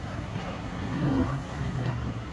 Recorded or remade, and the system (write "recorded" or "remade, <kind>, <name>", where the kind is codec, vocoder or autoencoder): remade, codec, SNAC